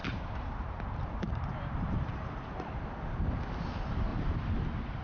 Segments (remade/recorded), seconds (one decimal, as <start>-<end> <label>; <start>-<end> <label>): 0.0-2.8 remade; 2.8-4.1 recorded; 4.1-4.6 remade; 4.6-5.0 recorded